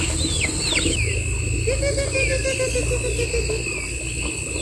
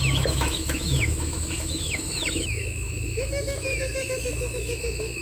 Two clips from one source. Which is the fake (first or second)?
second